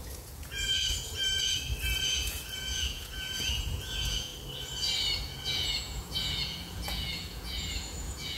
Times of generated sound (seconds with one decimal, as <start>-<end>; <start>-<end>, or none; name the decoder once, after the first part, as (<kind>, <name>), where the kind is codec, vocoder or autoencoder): 0.0-1.2 (vocoder, Vocos); 2.0-4.3; 5.4-8.4

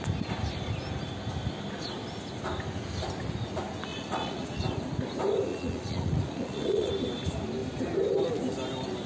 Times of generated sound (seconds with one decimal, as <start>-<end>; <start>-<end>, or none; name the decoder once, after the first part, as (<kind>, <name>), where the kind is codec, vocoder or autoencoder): 3.9-4.6 (vocoder, Vocos); 5.5-6.9

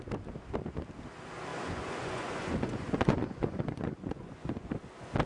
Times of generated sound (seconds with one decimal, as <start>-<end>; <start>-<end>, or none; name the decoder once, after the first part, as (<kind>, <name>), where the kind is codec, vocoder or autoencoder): 1.5-4.7 (vocoder, Vocos)

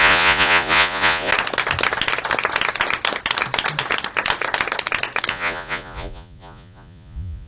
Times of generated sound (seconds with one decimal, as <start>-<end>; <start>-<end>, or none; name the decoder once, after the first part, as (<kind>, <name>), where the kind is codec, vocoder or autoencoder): 0.0-1.3 (vocoder, Vocos); 5.3-7.5

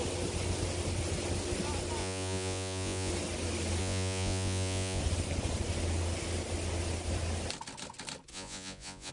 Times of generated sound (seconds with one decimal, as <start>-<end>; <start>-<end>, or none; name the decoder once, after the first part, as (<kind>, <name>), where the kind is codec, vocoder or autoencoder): 2.0-3.1 (vocoder, Vocos); 3.8-5.0; 8.3-9.1